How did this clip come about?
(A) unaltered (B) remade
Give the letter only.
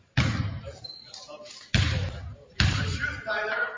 B